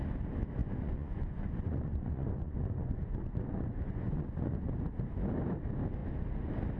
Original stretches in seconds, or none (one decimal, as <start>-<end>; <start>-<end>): 0.0-0.6; 4.7-6.8